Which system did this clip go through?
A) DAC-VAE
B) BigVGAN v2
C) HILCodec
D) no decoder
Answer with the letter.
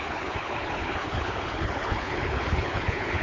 C